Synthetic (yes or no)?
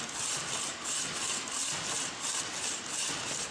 no